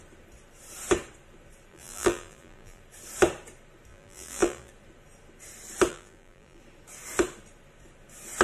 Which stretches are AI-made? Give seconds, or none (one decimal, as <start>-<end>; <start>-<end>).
1.7-2.8; 3.9-4.7; 5.9-6.6